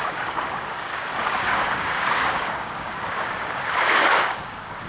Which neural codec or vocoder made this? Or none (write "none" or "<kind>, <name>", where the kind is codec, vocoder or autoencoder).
codec, DAC